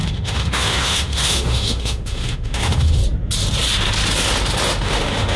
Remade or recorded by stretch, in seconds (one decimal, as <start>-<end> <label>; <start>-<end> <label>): 0.0-3.0 remade; 3.0-4.8 recorded; 4.8-5.4 remade